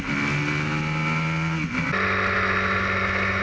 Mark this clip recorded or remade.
recorded